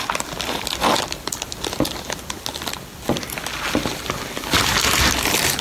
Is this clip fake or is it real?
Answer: real